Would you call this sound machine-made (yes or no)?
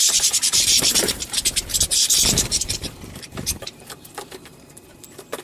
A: yes